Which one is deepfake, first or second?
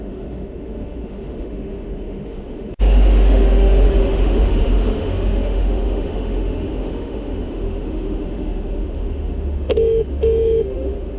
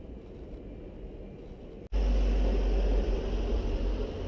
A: first